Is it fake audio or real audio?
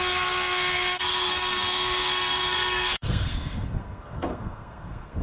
fake